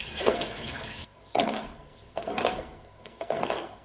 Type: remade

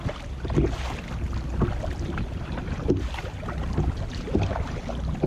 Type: recorded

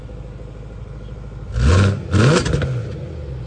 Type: recorded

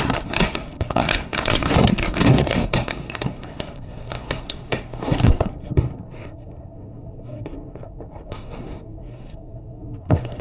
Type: remade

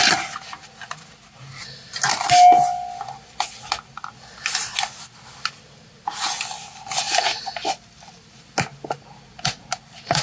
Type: recorded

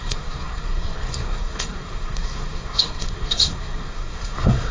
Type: remade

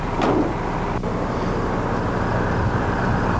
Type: recorded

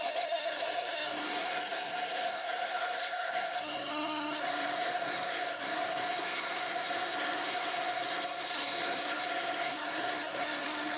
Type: remade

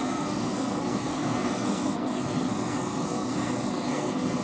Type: remade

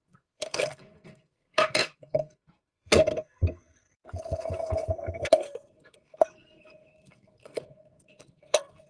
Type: remade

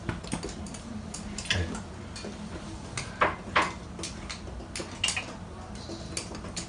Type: recorded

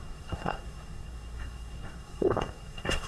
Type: remade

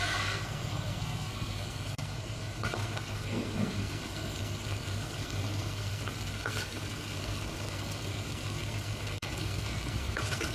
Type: remade